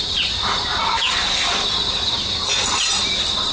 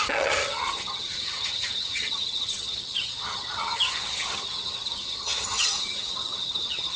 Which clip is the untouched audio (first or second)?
first